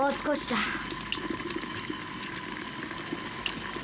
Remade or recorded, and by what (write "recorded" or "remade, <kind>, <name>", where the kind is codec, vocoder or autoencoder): recorded